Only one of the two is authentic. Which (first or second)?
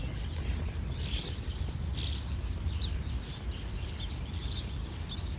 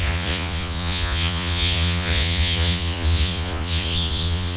first